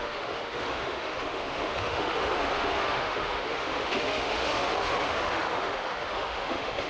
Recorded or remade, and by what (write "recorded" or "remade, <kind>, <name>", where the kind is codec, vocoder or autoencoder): remade, autoencoder, DAC-VAE